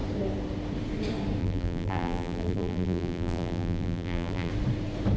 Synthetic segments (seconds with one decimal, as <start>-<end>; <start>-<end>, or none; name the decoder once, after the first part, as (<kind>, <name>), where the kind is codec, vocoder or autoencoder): 1.4-4.5 (vocoder, BigVGAN v2)